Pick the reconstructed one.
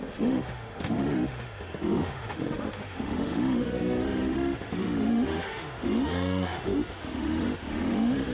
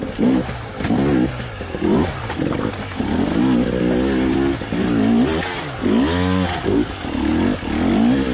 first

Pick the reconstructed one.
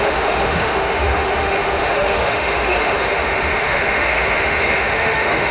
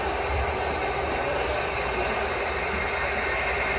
first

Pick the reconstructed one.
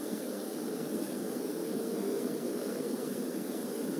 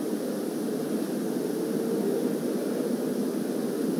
first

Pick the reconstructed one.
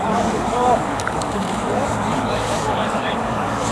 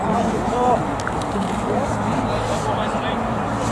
first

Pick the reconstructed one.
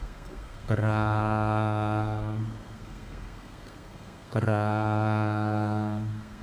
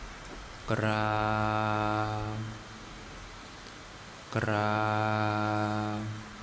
first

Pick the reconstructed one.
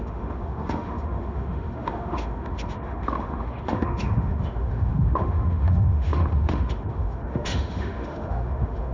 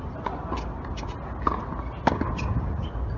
first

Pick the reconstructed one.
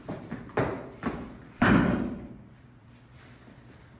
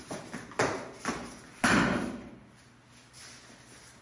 first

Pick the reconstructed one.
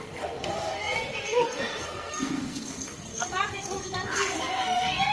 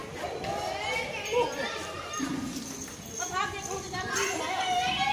first